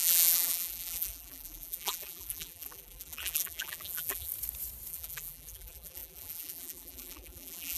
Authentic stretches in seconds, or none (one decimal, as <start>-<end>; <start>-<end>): 4.3-4.9